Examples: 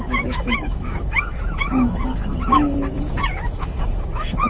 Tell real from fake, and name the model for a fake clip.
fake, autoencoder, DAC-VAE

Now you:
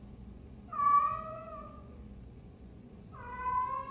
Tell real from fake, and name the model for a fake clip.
fake, vocoder, Vocos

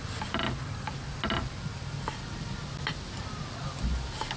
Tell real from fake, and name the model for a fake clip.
real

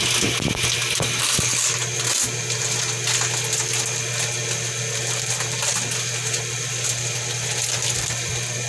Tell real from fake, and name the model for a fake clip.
real